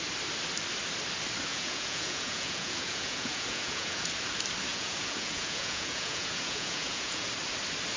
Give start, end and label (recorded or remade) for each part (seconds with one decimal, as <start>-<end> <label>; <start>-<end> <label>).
0.0-1.5 recorded; 1.5-4.1 remade; 4.1-4.7 recorded; 4.7-7.3 remade; 7.3-8.0 recorded